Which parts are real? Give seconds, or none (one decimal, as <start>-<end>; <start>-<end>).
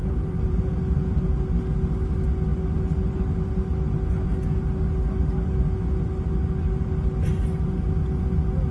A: 0.6-8.7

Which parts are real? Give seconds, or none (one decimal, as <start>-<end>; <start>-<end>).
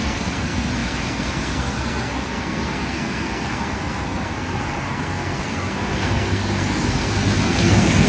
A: none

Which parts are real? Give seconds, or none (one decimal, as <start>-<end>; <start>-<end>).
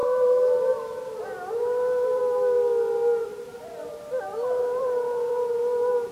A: 2.2-3.3; 5.3-6.1